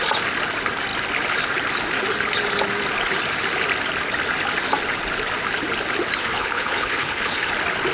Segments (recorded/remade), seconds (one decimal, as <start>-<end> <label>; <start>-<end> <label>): 0.0-6.2 recorded; 6.2-7.5 remade; 7.5-7.9 recorded